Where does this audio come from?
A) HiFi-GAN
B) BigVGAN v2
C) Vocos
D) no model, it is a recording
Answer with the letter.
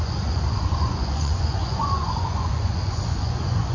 C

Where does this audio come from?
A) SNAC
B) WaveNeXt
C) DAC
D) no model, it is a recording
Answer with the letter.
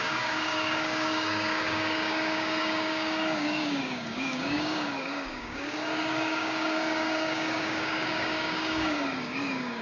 C